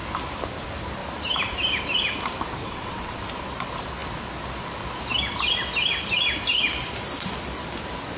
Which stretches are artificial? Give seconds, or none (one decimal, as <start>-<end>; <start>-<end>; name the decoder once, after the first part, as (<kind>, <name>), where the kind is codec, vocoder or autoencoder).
2.6-3.2 (vocoder, WaveNeXt)